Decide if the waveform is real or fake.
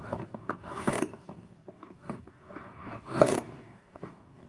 fake